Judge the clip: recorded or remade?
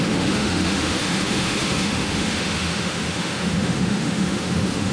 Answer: remade